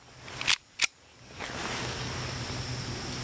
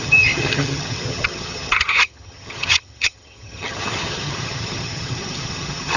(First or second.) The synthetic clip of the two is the second